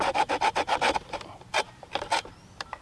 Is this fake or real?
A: fake